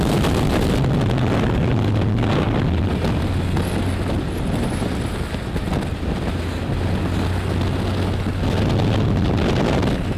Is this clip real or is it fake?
real